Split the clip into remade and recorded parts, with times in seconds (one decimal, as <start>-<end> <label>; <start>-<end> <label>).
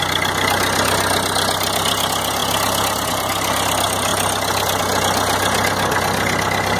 0.0-6.8 recorded